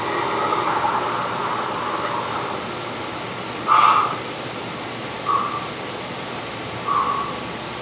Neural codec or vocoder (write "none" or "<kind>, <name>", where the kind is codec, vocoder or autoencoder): none